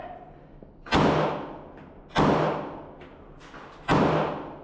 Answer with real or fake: real